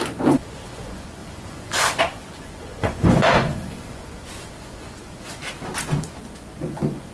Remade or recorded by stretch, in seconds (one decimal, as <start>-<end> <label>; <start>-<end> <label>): 0.0-5.4 remade; 5.4-6.0 recorded; 6.0-7.1 remade